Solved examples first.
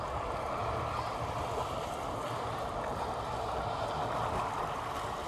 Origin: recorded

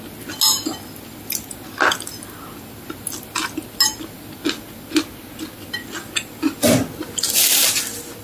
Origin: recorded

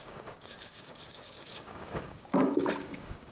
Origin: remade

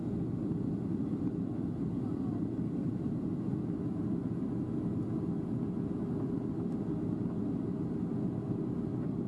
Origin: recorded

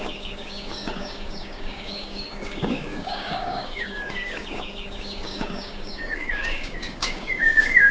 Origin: remade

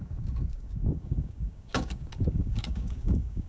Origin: remade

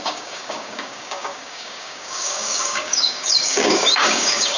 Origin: remade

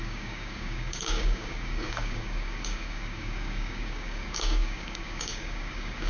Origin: remade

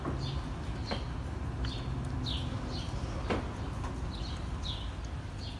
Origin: recorded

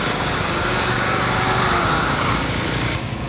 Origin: remade